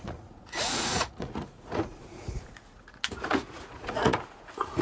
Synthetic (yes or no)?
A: yes